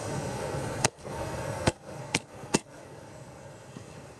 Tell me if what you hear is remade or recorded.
remade